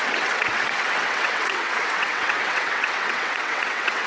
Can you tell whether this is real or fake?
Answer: fake